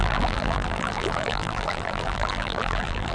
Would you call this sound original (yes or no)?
no